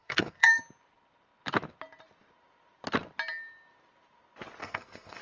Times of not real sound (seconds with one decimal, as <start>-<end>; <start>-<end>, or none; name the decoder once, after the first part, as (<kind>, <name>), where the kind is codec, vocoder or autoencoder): 0.0-0.6 (codec, SNAC); 4.6-5.2